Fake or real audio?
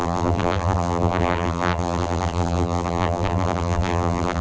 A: fake